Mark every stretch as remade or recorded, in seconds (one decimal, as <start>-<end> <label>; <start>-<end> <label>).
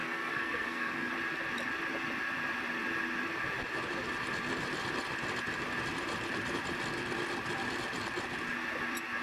0.0-1.1 remade; 1.1-9.2 recorded